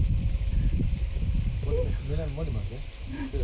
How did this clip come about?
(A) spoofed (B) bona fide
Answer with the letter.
B